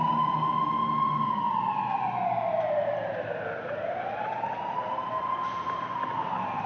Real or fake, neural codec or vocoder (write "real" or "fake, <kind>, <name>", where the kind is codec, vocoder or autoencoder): real